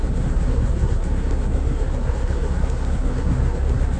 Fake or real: fake